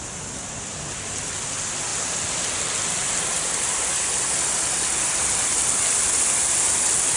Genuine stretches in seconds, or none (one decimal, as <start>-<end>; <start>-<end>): 0.0-7.2